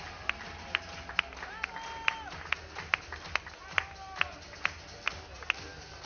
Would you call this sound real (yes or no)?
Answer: yes